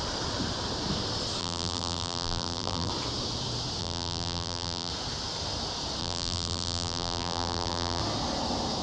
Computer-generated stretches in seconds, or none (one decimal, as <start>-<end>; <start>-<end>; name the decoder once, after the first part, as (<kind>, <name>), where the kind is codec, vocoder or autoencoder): 1.4-2.9 (vocoder, BigVGAN v2); 3.8-4.9; 6.0-8.0